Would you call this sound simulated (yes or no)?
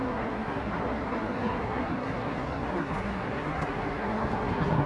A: yes